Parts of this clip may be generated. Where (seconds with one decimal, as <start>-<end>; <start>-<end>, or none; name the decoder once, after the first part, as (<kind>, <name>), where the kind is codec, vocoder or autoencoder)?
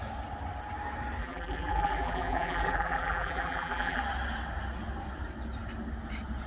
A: 1.2-4.0 (vocoder, BigVGAN v2)